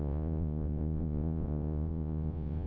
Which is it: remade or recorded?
remade